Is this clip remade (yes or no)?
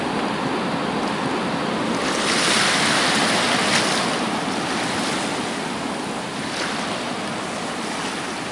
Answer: no